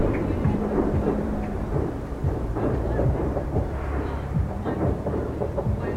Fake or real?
fake